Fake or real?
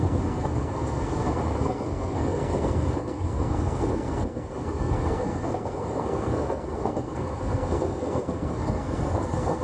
fake